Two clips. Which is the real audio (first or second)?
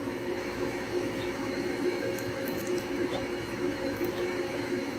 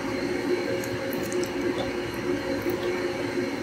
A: second